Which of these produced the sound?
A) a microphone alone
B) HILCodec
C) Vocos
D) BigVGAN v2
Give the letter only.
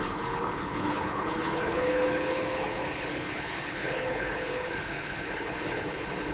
B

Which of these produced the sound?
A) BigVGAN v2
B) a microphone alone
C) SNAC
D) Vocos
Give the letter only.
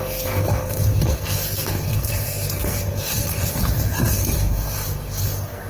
C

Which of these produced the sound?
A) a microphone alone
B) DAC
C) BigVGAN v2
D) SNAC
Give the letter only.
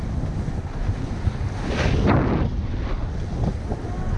A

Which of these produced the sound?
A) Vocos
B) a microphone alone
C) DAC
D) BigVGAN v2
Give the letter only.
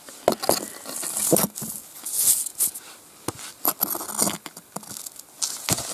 B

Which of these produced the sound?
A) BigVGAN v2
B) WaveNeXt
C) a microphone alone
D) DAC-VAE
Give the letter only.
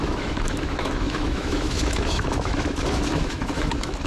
D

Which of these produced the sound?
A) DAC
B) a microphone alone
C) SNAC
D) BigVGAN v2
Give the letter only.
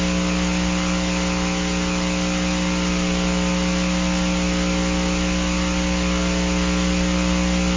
B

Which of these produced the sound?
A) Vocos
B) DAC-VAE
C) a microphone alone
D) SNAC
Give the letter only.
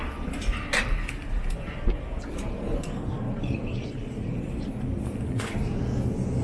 C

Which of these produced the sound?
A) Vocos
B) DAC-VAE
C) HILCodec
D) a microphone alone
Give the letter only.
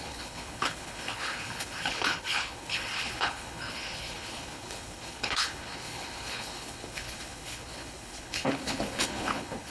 C